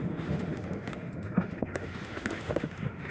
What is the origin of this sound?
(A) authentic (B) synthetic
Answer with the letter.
B